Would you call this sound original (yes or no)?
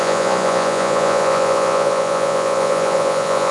no